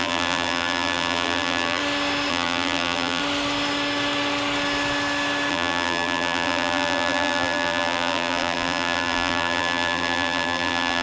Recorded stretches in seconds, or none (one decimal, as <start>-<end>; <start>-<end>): 1.8-2.3; 3.2-5.5